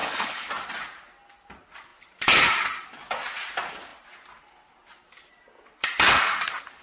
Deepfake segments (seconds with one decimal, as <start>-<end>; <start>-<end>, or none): 0.0-0.5